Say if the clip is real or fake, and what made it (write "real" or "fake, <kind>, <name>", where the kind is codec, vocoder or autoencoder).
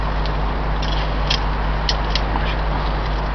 real